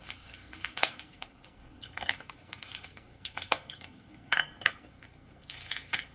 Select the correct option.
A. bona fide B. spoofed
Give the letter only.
B